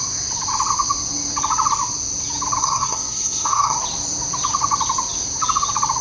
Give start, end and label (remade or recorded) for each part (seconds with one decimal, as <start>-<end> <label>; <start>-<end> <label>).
0.0-2.6 recorded; 2.6-3.8 remade; 3.8-6.0 recorded